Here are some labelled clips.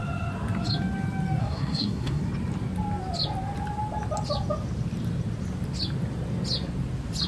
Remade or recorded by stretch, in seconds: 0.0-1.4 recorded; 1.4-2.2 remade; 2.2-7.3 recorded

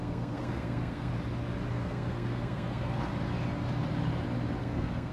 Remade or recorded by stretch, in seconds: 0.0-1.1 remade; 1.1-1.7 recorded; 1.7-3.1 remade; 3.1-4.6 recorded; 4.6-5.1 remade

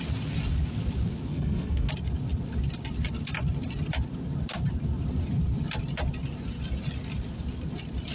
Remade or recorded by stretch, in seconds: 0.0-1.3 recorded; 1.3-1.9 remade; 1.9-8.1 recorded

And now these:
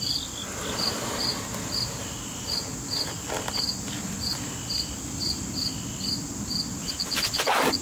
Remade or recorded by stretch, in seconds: 0.0-7.8 recorded

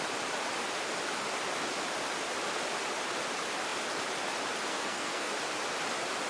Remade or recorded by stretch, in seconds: 0.0-4.7 recorded; 4.7-5.3 remade; 5.3-6.3 recorded

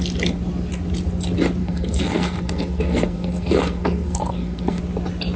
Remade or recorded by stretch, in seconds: 0.0-1.6 recorded; 1.6-4.8 remade; 4.8-5.4 recorded